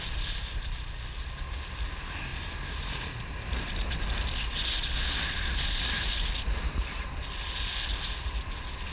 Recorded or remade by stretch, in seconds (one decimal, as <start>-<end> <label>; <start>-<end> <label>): 0.0-8.9 recorded